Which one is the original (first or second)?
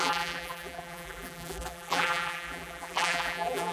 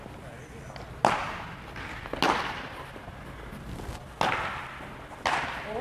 second